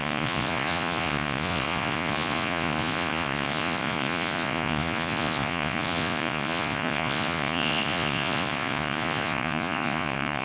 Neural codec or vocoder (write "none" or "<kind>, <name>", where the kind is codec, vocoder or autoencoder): vocoder, Vocos